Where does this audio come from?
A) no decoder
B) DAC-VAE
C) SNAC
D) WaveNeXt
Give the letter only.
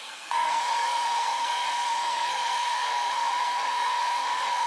C